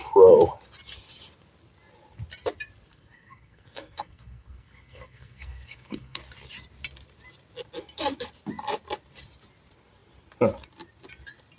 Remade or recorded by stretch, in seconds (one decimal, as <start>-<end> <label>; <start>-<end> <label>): 0.0-2.9 recorded; 2.9-6.2 remade; 6.2-11.6 recorded